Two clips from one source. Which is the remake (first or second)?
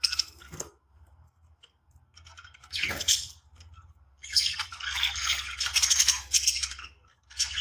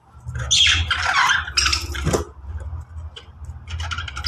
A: first